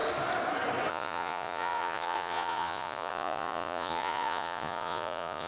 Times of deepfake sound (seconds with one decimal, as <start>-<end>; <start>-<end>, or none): 0.9-5.5